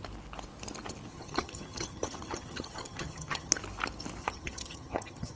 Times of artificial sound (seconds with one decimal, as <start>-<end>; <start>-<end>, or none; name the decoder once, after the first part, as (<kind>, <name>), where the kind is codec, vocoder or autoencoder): 1.1-3.5 (vocoder, HiFi-GAN); 4.2-5.4